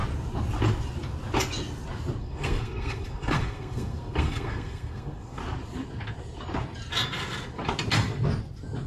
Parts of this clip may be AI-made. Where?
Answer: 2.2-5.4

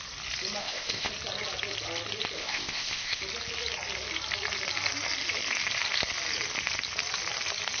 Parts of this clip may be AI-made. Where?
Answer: 0.6-1.1; 2.4-3.2

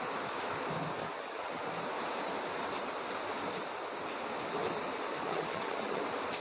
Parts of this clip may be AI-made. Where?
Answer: 1.0-1.6; 5.1-6.0

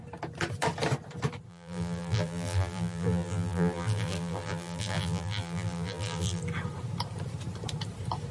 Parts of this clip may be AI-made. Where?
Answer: 1.5-6.4

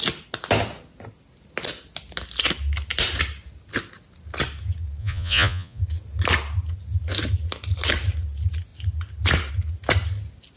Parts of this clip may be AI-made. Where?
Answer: 5.0-5.8